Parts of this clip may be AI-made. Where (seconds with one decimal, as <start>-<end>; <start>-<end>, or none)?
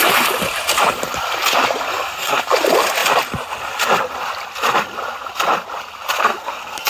1.9-2.4; 6.2-6.9